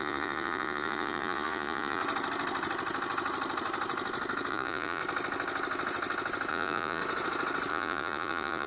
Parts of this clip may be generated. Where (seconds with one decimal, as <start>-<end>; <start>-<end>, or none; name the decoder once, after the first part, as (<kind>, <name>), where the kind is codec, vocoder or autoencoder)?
0.0-2.0 (vocoder, Vocos); 4.5-5.0; 6.5-7.0; 7.7-8.7